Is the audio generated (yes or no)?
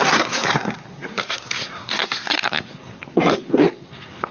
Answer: yes